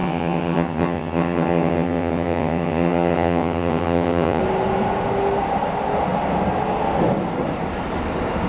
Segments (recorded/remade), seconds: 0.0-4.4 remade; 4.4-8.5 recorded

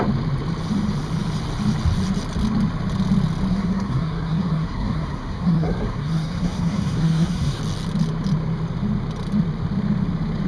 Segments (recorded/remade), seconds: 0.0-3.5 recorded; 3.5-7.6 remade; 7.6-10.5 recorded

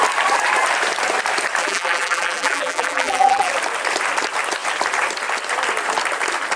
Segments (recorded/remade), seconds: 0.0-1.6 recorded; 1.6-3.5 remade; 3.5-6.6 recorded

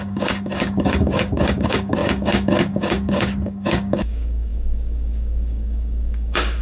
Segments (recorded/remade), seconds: 0.0-6.6 remade

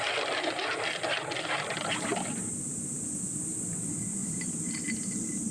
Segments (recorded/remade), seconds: 0.0-4.2 recorded; 4.2-5.5 remade

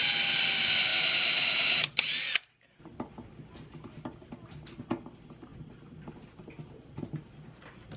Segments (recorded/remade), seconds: 0.0-8.0 recorded